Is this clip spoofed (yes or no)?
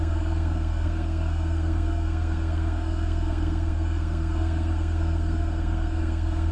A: yes